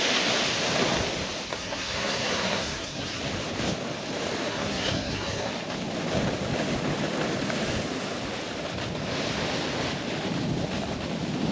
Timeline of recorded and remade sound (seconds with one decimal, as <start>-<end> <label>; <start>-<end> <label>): 0.0-1.5 recorded; 1.5-3.2 remade; 3.2-4.5 recorded; 4.5-5.5 remade; 5.5-11.5 recorded